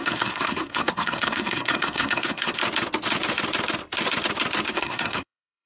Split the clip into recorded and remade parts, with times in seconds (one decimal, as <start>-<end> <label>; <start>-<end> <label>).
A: 0.0-2.6 remade; 2.6-4.7 recorded; 4.7-5.7 remade